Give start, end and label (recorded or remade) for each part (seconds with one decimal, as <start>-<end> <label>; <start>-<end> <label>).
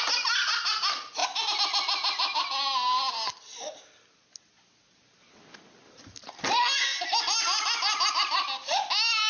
0.0-9.3 recorded